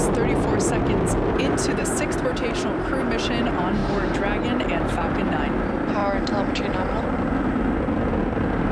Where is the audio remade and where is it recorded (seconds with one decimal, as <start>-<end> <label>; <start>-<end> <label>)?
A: 0.0-8.7 recorded